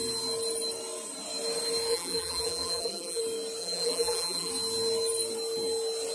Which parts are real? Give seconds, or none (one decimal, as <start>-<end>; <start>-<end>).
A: 0.0-1.9; 3.2-3.6; 4.5-6.1